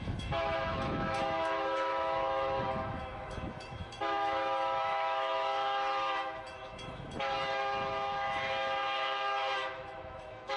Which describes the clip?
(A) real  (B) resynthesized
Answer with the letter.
B